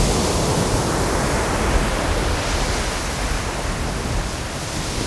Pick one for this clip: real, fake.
real